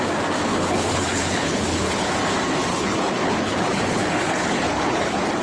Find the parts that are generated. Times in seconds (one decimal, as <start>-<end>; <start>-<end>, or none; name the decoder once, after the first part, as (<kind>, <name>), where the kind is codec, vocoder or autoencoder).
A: 0.5-2.1 (codec, HILCodec); 2.7-5.4